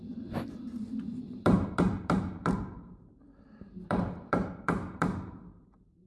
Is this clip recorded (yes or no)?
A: no